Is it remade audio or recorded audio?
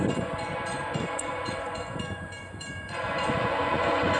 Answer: remade